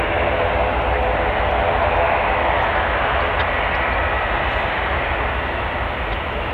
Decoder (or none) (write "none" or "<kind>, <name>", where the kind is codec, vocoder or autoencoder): none